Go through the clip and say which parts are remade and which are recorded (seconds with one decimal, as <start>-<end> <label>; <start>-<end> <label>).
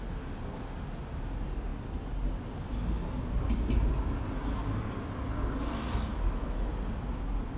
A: 0.0-6.1 recorded; 6.1-6.7 remade; 6.7-7.6 recorded